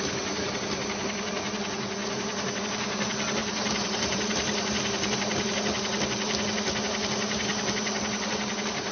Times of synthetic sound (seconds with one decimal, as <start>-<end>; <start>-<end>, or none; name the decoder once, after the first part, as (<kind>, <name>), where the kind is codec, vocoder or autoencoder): 2.0-2.6 (vocoder, BigVGAN v2); 3.4-5.5